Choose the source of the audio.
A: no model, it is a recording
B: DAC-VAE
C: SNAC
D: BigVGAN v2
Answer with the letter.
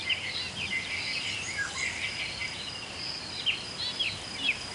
A